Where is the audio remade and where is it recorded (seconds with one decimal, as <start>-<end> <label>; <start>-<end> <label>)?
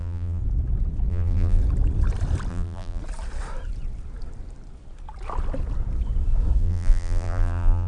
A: 0.0-0.4 remade; 0.4-1.1 recorded; 1.1-1.6 remade; 1.6-2.5 recorded; 2.5-3.0 remade; 3.0-6.6 recorded; 6.6-7.9 remade